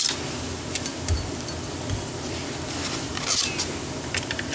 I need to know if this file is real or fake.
real